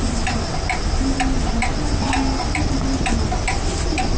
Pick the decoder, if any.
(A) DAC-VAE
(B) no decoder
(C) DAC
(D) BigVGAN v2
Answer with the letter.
B